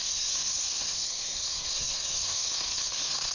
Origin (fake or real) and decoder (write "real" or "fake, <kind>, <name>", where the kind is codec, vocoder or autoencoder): fake, codec, SNAC